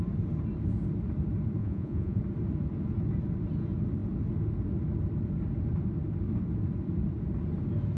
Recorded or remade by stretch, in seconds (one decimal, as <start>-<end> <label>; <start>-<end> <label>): 0.0-1.6 recorded; 1.6-2.2 remade; 2.2-8.0 recorded